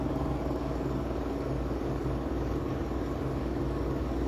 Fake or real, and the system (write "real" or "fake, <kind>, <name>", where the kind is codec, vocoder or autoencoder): fake, codec, DAC